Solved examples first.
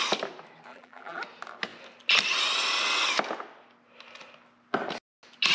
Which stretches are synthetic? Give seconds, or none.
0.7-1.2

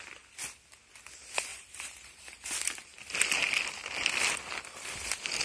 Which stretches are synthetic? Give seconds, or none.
1.5-2.5

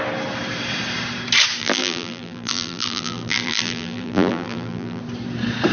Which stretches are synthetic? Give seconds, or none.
1.6-5.0

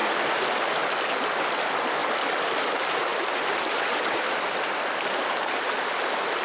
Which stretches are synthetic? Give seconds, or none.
0.0-0.6; 3.1-5.0

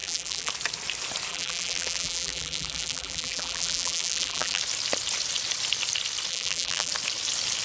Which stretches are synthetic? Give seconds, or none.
0.0-0.5; 1.3-4.6; 6.3-6.9